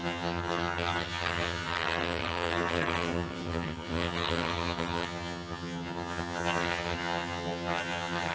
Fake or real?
fake